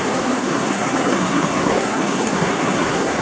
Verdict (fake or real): fake